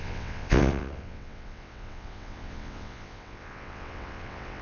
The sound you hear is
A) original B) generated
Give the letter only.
B